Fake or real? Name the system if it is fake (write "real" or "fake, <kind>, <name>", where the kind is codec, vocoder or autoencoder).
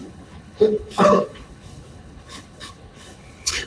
fake, codec, HILCodec